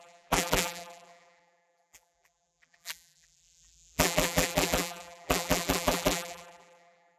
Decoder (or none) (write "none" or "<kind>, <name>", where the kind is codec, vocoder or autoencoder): vocoder, BigVGAN v2